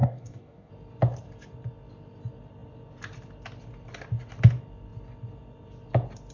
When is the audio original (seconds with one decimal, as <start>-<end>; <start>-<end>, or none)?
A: 0.7-6.3